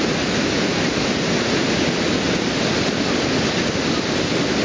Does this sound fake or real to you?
real